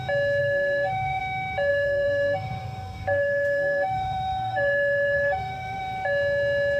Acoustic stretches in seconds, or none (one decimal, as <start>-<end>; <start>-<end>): 0.0-0.4; 1.2-1.7; 5.8-6.8